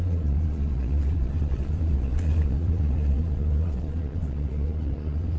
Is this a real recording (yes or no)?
no